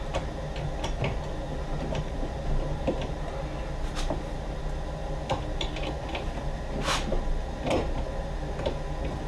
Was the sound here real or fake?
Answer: real